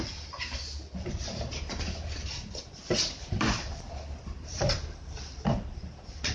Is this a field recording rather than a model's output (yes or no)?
no